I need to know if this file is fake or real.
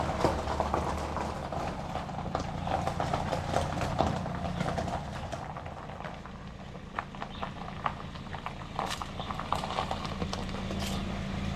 real